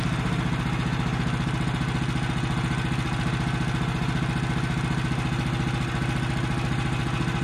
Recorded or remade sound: recorded